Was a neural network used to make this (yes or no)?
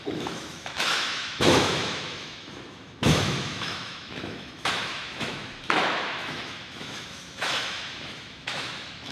yes